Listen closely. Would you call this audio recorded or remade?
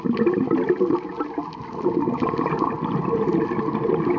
recorded